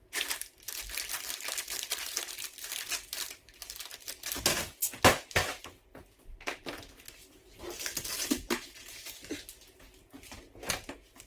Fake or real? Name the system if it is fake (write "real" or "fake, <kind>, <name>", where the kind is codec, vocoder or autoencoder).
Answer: real